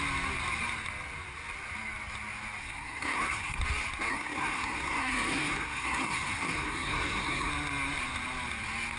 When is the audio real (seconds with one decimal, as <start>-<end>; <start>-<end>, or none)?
0.0-2.6; 3.6-4.1; 7.5-9.0